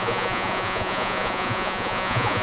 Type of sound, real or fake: fake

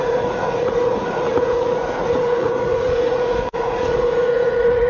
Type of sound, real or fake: fake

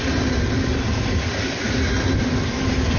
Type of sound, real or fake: real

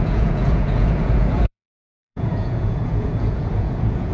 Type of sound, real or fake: fake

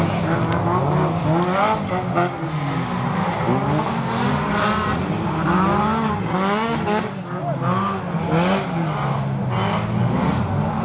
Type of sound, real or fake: real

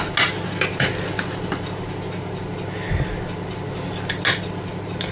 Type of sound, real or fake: real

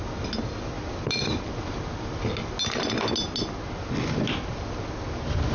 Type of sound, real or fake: real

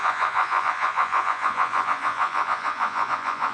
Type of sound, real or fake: fake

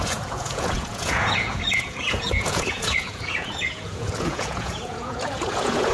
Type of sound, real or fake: fake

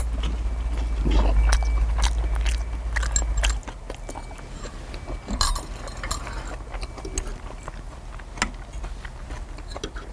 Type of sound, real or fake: real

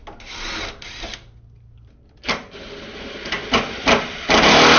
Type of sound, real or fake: real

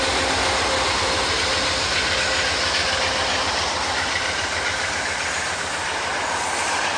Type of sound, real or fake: real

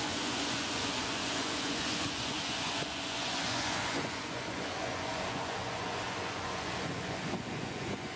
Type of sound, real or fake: fake